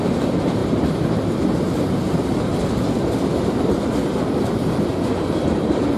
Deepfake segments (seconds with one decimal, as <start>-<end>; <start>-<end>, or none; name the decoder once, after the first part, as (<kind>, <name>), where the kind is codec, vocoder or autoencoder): 0.0-0.6 (vocoder, BigVGAN v2); 1.5-2.5; 4.4-4.9; 5.5-6.0